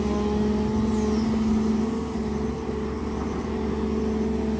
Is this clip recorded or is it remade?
recorded